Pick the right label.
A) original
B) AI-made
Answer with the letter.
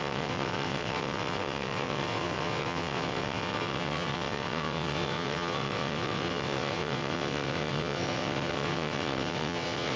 B